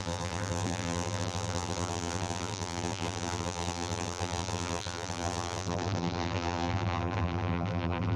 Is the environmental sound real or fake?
fake